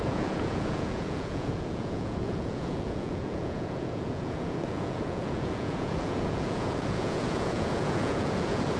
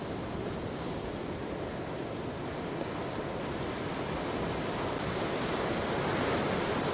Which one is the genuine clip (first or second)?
second